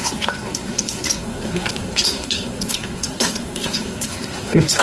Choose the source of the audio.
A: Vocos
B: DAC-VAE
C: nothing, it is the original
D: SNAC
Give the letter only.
D